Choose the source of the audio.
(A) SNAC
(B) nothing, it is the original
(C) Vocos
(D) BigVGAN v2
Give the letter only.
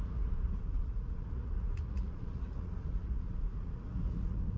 C